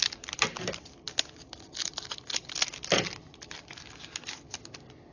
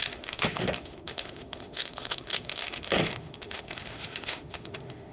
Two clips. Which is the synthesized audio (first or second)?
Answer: second